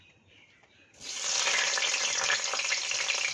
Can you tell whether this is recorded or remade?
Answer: remade